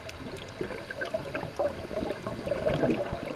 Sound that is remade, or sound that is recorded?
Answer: recorded